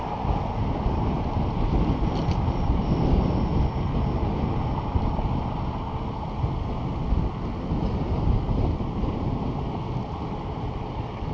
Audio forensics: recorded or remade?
recorded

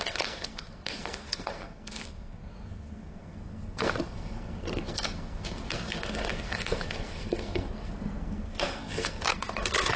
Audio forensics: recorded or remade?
remade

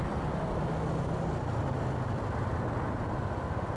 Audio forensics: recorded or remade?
recorded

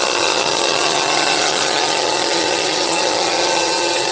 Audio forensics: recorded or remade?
remade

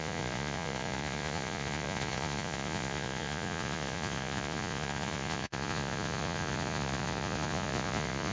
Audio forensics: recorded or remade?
remade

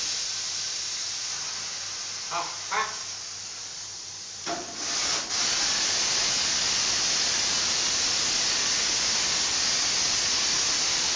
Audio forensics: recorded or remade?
recorded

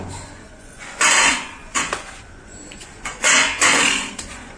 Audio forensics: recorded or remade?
remade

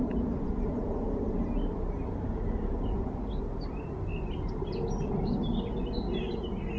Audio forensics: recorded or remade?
recorded